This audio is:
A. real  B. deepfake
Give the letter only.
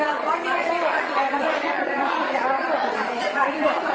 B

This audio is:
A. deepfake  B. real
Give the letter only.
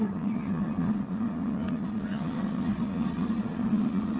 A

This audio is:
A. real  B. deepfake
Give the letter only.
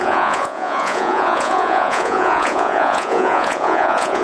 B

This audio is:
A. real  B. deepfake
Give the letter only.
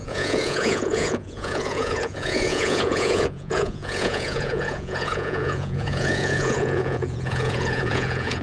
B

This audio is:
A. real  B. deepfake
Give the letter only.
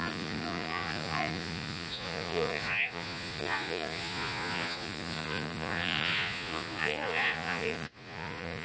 B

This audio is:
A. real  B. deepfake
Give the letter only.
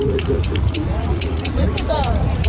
B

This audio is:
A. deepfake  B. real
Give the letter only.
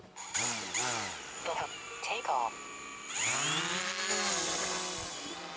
B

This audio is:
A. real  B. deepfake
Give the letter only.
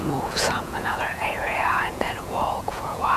B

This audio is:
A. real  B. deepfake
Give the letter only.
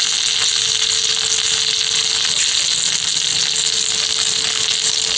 A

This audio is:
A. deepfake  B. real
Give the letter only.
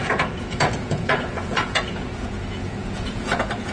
A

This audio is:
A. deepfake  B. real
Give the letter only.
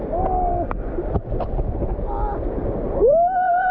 B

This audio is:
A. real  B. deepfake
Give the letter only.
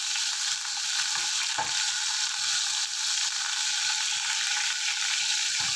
A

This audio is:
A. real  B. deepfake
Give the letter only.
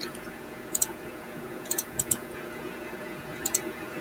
B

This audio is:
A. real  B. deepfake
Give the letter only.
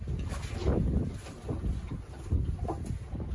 A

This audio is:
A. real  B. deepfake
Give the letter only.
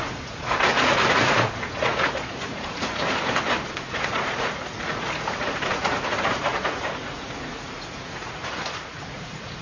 B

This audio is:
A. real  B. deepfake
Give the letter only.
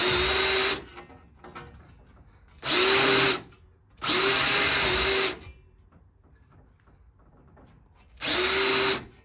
A